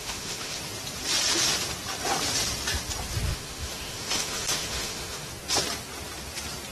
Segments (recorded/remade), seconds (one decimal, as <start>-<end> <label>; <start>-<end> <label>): 0.0-0.6 remade; 0.6-3.3 recorded; 3.3-5.3 remade; 5.3-6.7 recorded